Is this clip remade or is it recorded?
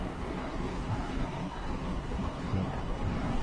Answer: remade